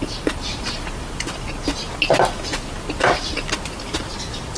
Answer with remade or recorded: recorded